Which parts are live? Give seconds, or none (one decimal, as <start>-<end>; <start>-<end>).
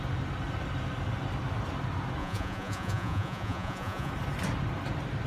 0.0-2.2; 4.1-5.3